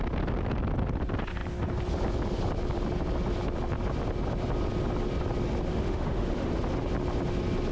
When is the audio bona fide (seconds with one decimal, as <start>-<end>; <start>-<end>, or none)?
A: 0.0-5.7; 6.5-7.7